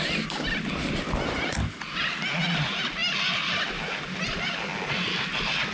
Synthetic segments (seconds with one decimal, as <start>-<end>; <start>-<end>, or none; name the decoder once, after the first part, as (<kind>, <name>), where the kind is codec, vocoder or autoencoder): none